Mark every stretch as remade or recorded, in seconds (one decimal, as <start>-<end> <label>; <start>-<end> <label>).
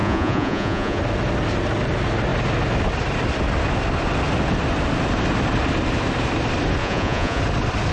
0.0-1.0 remade; 1.0-6.8 recorded; 6.8-7.4 remade; 7.4-7.9 recorded